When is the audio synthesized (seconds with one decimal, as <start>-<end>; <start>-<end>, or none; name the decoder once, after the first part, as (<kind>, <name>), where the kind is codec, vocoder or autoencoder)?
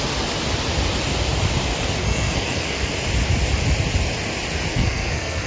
2.0-2.9 (codec, SNAC); 4.7-5.5